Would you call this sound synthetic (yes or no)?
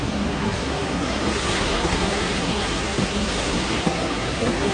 yes